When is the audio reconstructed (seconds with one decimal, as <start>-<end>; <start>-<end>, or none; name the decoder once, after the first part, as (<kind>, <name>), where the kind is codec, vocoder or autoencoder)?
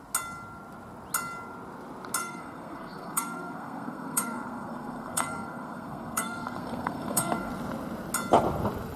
2.2-7.5 (codec, SNAC)